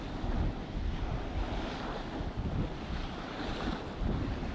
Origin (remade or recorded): recorded